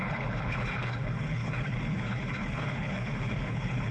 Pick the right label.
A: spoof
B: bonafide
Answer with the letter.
A